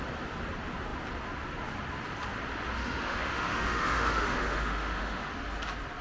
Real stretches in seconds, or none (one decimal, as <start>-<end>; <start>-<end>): 0.0-2.8; 5.3-6.0